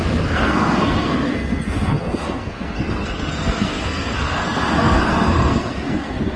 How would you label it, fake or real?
fake